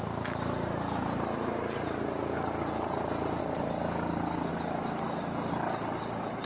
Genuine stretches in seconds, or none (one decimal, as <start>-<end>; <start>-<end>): 0.0-6.5